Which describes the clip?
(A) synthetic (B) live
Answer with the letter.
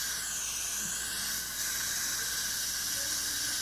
B